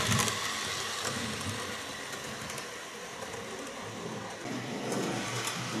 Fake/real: real